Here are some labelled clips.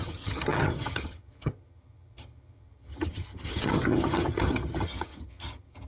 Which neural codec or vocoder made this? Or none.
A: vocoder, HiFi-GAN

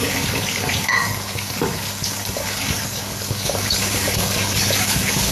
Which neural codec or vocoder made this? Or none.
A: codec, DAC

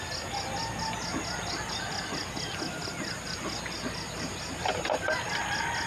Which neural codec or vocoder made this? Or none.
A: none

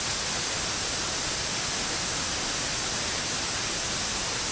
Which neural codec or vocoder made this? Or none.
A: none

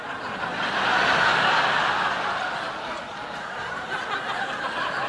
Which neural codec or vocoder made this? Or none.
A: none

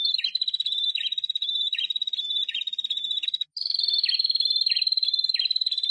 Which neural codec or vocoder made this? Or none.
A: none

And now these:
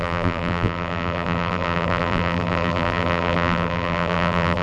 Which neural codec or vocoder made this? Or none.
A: vocoder, BigVGAN v2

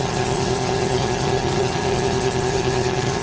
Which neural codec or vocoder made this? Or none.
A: vocoder, HiFi-GAN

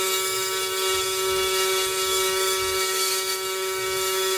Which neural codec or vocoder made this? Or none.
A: codec, DAC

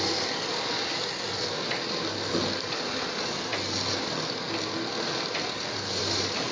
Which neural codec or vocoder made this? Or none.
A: none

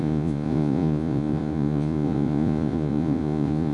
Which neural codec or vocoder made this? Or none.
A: vocoder, Vocos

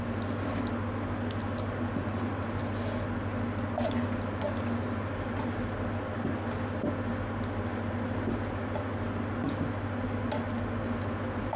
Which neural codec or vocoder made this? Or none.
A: none